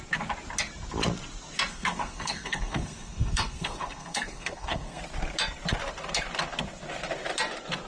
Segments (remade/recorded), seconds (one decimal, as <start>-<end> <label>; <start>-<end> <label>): 0.0-1.7 recorded; 1.7-5.0 remade; 5.0-7.9 recorded